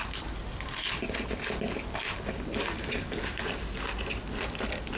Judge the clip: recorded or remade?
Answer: recorded